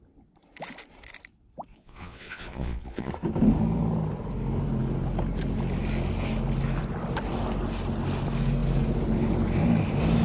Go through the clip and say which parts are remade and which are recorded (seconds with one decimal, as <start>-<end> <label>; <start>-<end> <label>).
0.0-1.7 recorded; 1.7-3.1 remade; 3.1-10.2 recorded